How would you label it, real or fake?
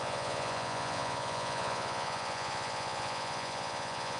fake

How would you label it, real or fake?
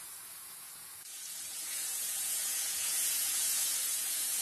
fake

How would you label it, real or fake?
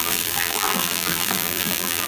fake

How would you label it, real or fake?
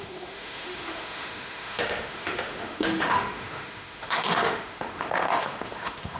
fake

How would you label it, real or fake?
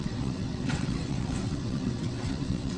fake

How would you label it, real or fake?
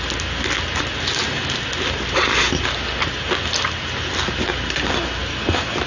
real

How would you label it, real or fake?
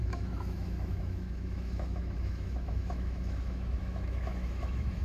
fake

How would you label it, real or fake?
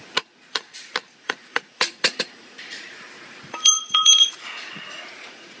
fake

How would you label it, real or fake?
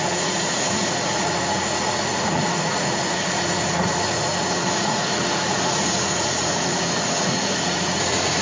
fake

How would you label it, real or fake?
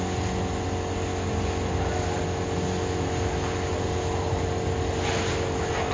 real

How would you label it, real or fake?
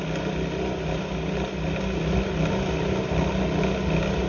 real